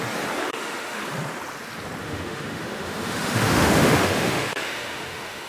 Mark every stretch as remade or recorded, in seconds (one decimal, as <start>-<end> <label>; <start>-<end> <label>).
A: 0.0-0.4 recorded; 0.4-1.0 remade; 1.0-2.0 recorded; 2.0-5.5 remade